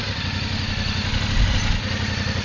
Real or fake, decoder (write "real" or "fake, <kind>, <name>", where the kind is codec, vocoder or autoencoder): real